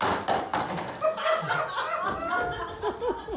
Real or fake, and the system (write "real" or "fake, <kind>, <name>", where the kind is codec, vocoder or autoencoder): real